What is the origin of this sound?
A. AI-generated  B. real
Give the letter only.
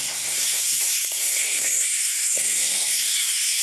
A